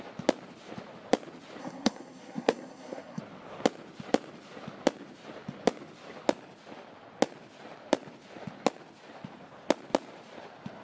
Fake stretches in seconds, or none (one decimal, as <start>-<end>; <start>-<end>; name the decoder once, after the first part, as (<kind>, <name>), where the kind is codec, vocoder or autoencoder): 1.6-3.2 (codec, SNAC)